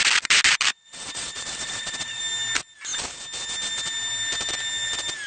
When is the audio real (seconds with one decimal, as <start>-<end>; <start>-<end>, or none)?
0.0-0.7; 2.2-5.3